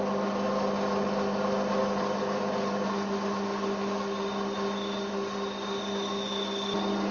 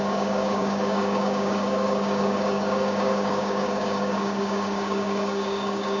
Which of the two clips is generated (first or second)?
second